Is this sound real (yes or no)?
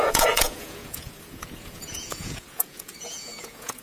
no